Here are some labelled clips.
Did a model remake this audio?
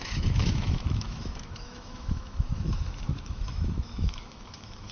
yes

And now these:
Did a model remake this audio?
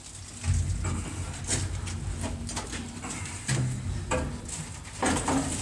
no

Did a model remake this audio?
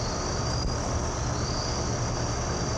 no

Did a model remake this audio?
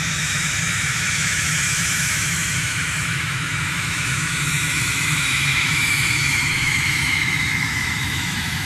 yes